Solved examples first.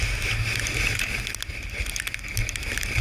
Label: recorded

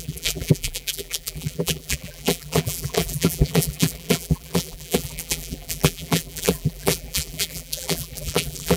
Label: remade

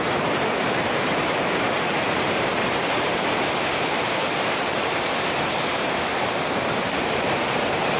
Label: remade